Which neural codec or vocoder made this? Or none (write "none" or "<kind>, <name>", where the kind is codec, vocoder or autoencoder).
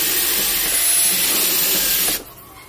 none